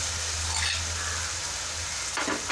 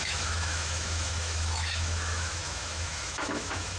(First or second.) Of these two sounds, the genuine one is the first